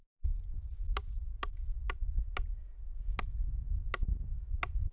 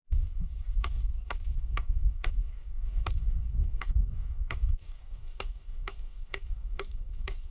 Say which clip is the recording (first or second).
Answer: first